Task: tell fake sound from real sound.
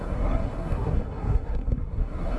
fake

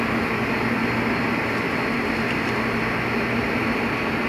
real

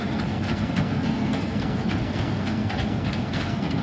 fake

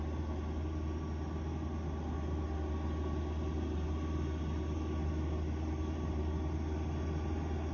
real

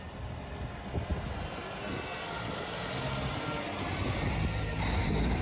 real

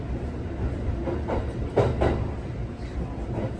real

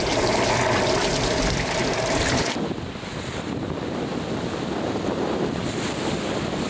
real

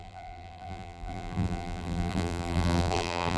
fake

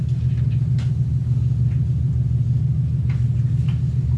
real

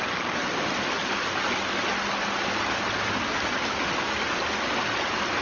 real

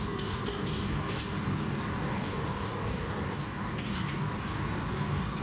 fake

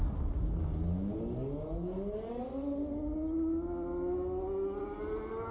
real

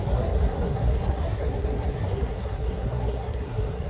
fake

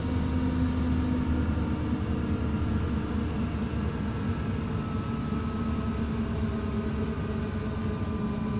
real